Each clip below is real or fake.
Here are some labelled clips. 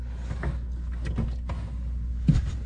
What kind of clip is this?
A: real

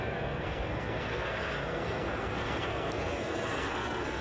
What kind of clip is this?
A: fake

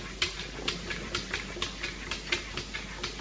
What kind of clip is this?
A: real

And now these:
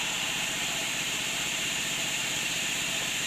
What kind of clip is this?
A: fake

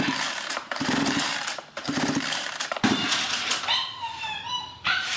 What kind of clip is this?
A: fake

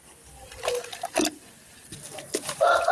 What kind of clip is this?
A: real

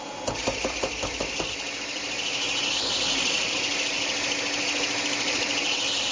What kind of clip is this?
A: real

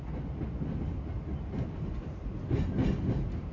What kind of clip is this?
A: real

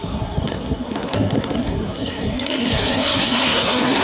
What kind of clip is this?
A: fake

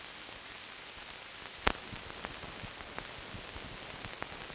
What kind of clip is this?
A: real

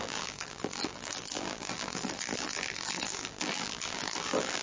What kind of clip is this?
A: fake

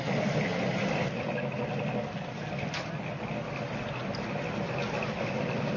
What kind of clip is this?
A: real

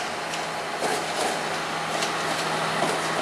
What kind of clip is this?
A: real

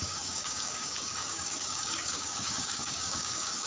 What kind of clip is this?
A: fake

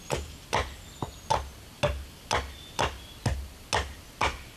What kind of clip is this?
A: real